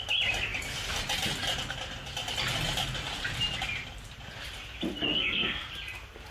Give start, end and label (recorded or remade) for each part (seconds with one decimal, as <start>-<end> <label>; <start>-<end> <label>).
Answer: 0.0-5.1 recorded; 5.1-5.7 remade; 5.7-6.3 recorded